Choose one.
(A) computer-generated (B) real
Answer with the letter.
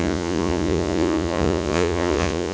A